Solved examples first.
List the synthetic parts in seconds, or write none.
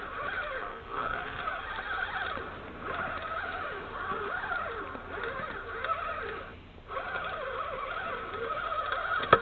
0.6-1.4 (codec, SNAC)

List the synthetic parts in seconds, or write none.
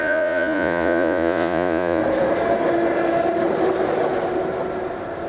0.0-2.0 (vocoder, Vocos)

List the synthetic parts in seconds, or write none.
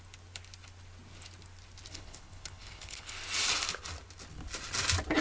1.9-3.1 (codec, HILCodec)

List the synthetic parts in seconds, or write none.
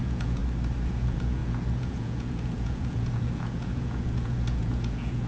0.0-0.4 (vocoder, Vocos); 0.9-5.3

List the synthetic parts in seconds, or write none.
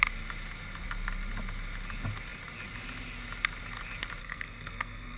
4.2-5.2 (codec, SNAC)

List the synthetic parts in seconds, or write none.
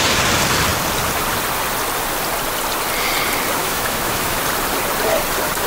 3.6-4.4 (autoencoder, DAC-VAE)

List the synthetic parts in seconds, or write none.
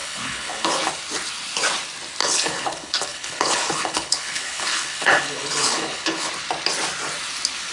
0.0-0.9 (codec, HILCodec); 2.2-6.3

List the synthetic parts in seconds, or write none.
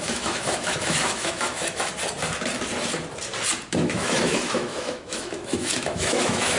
0.0-1.9 (autoencoder, DAC-VAE); 3.7-6.6